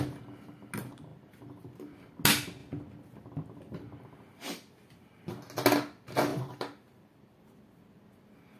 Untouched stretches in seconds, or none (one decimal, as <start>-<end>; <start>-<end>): 0.0-1.1; 2.1-6.3; 7.4-8.6